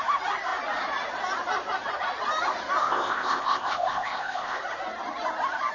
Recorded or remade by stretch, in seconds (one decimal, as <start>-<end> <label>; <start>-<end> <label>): 0.0-2.8 recorded; 2.8-4.6 remade; 4.6-5.7 recorded